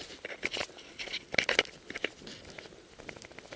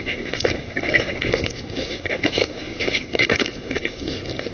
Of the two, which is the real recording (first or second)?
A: first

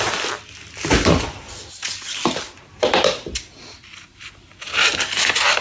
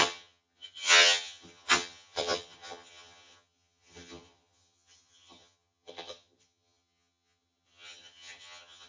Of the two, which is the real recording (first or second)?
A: first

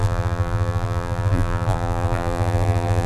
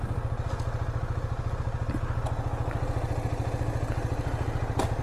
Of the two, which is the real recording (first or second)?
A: second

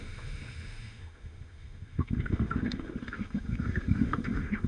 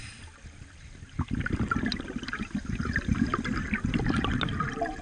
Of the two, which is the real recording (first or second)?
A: second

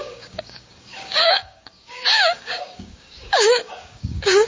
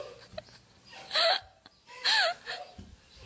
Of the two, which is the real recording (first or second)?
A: second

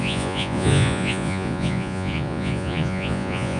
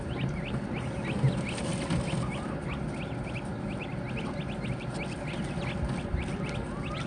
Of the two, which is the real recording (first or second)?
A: second